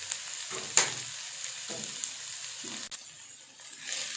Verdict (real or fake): real